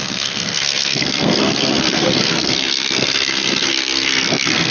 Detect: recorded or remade remade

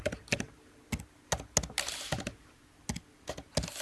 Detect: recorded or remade recorded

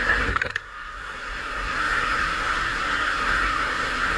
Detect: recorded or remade remade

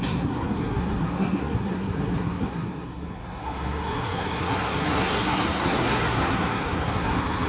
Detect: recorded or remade remade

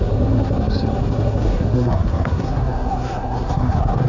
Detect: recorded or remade remade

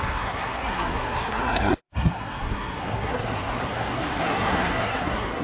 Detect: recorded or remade remade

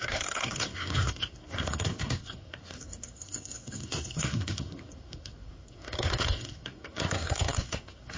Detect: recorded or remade remade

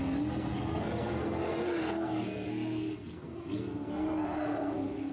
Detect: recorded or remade remade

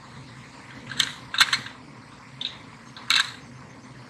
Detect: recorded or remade recorded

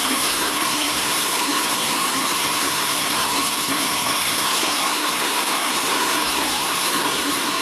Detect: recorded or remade remade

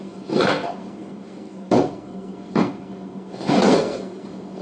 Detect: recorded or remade remade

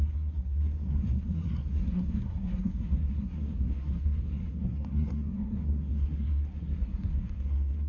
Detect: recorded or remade remade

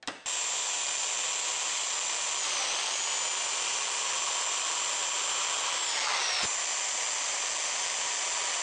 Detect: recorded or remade recorded